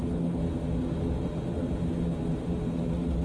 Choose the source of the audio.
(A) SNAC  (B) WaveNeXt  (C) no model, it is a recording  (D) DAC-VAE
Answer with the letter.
C